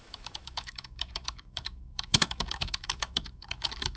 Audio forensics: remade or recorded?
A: remade